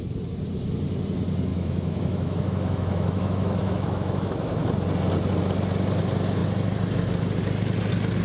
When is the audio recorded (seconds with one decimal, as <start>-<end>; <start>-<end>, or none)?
0.0-1.5; 4.5-8.2

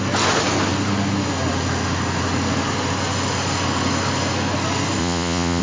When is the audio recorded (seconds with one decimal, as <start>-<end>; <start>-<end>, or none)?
0.0-5.0